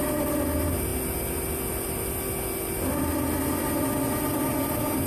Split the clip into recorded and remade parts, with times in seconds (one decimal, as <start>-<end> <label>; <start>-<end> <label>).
0.0-5.1 recorded